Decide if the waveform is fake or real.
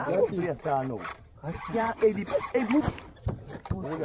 fake